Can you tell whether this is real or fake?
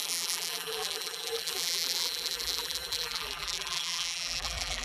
fake